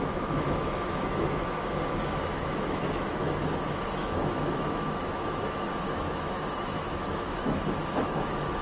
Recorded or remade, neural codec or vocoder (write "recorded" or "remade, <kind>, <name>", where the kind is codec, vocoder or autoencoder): remade, autoencoder, DAC-VAE